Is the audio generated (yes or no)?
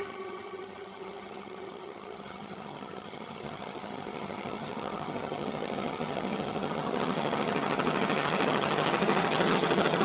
yes